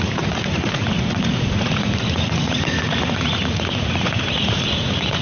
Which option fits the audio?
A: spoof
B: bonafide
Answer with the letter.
A